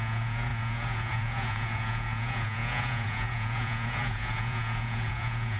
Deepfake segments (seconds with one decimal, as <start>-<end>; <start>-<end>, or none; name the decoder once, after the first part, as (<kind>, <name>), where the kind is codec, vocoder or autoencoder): 0.0-5.6 (vocoder, Vocos)